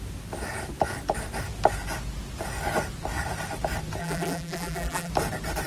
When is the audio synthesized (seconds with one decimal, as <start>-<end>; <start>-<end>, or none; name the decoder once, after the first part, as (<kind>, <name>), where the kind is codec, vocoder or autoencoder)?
4.0-5.1 (vocoder, BigVGAN v2)